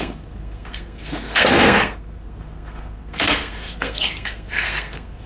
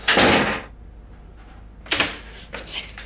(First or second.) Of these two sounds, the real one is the second